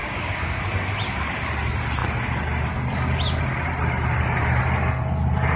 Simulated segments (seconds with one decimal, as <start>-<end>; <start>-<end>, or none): 0.0-0.6